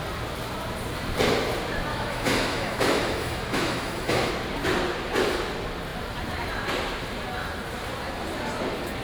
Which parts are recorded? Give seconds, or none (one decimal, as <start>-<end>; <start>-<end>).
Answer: 0.0-1.9; 4.3-9.0